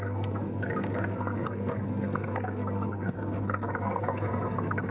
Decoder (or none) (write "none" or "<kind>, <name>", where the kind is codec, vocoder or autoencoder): codec, SNAC